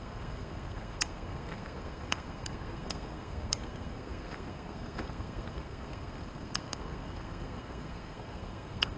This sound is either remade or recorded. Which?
remade